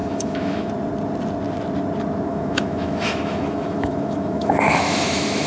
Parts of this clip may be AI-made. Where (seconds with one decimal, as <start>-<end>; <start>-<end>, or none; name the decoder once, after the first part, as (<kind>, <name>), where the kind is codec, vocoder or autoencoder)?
0.0-0.7 (autoencoder, DAC-VAE); 2.3-5.5